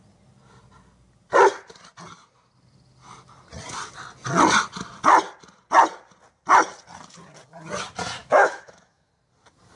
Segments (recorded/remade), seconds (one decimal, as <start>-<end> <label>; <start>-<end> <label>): 0.0-8.2 recorded; 8.2-9.1 remade; 9.1-9.8 recorded